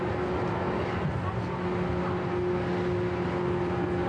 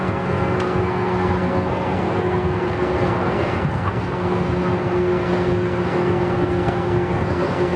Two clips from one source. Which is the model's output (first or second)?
second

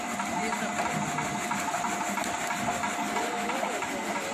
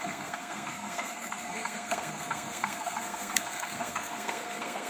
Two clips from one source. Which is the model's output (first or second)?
second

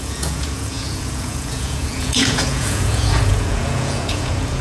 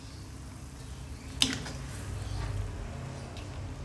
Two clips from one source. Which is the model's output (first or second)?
first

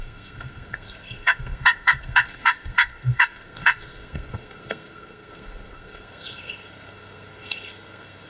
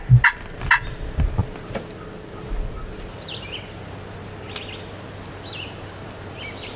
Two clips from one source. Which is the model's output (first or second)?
first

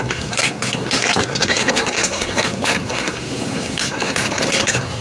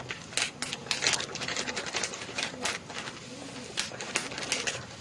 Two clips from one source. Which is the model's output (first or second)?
first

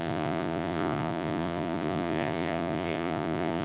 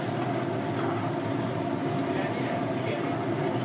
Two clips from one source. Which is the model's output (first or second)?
first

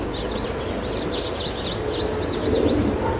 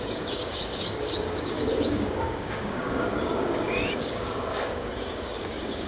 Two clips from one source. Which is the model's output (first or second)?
second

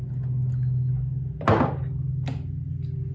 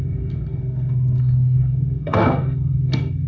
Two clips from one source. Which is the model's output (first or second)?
second